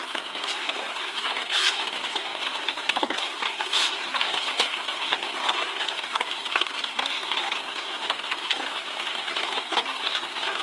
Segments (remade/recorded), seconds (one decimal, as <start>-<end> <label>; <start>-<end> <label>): 0.0-10.6 remade